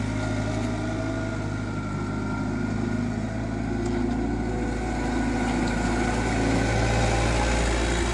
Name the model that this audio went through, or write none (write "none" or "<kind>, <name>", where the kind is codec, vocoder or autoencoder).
none